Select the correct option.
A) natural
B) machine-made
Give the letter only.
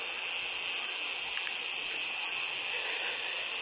A